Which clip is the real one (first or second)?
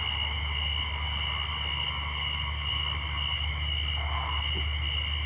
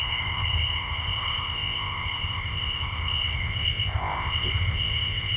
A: first